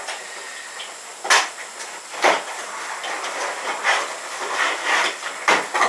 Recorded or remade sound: recorded